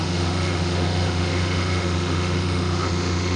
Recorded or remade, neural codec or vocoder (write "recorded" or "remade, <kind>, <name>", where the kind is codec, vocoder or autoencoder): remade, autoencoder, DAC-VAE